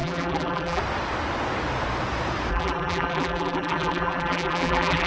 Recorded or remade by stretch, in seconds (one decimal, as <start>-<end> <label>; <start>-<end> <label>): 0.0-0.8 remade; 0.8-2.5 recorded; 2.5-5.1 remade